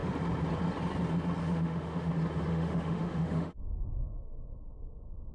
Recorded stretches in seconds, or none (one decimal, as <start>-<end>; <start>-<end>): 0.0-1.4; 2.1-2.5